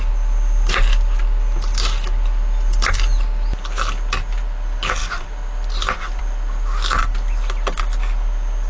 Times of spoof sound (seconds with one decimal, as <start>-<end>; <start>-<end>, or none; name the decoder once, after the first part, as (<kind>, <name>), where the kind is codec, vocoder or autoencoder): none